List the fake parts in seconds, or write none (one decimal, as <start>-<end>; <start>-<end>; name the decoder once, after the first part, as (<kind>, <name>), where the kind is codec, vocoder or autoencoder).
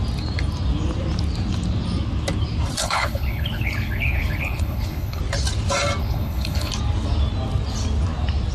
2.8-5.2 (codec, HILCodec); 6.0-6.7